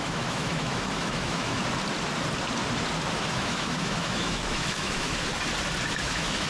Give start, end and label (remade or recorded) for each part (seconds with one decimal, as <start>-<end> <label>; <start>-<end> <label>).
0.0-1.6 remade; 1.6-3.3 recorded; 3.3-5.3 remade; 5.3-6.0 recorded; 6.0-6.5 remade